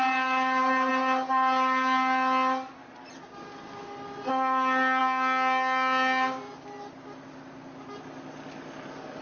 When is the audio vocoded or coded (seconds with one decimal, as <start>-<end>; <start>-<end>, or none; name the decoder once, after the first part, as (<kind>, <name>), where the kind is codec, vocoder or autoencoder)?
none